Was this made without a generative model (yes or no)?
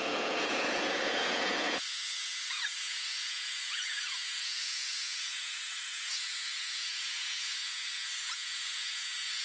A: no